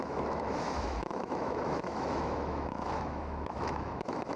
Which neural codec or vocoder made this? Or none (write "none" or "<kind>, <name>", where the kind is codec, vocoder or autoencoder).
autoencoder, DAC-VAE